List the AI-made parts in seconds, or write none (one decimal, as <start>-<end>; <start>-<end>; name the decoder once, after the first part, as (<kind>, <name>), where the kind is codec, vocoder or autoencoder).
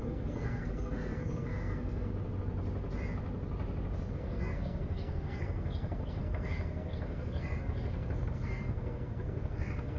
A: 0.0-2.1 (codec, SNAC); 4.1-10.0